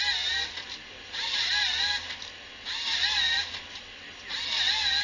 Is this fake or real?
real